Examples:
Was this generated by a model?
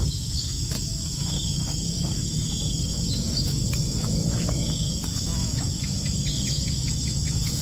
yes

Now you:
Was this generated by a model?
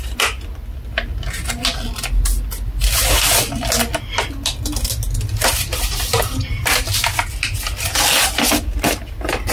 no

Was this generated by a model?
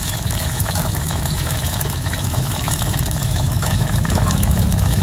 yes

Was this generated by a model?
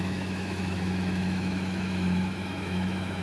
yes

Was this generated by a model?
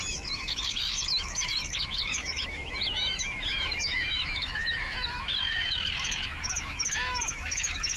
yes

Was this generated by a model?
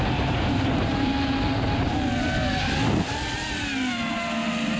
no